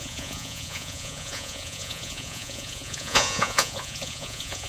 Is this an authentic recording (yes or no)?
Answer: no